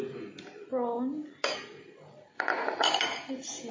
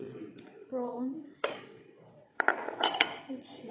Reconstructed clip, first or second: second